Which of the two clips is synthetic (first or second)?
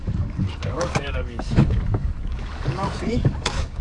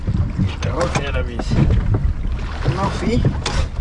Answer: first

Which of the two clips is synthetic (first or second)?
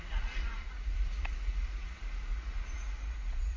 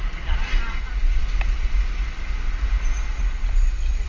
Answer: first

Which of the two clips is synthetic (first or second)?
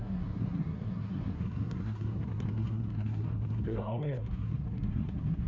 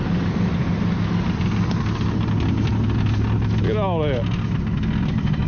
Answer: first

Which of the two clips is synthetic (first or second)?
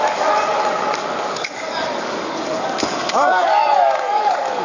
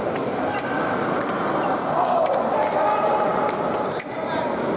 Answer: first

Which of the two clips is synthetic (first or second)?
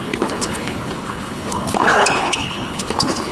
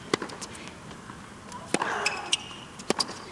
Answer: first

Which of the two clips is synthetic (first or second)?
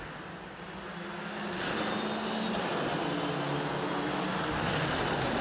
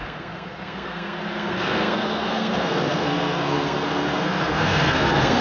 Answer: second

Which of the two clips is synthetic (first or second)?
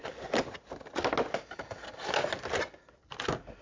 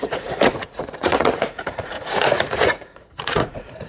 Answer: second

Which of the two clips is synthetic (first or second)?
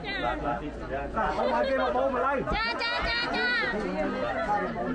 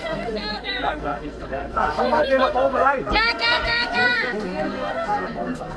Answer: second